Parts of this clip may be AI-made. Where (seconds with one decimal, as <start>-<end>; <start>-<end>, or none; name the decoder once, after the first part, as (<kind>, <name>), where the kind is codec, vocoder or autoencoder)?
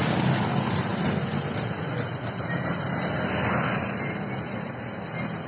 none